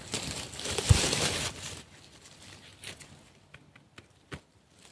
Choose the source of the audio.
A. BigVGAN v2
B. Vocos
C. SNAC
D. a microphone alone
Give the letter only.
D